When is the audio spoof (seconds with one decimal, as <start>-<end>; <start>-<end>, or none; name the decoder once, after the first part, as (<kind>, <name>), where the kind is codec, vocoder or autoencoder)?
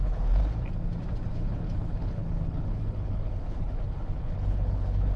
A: 0.0-0.4 (codec, HILCodec); 1.3-5.2